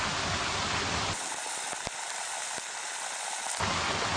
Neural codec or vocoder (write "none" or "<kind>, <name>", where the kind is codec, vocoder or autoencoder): none